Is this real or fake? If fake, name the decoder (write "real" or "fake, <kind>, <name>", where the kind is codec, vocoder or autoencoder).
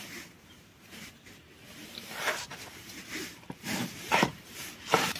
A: fake, vocoder, BigVGAN v2